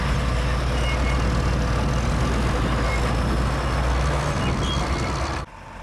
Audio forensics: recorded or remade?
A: recorded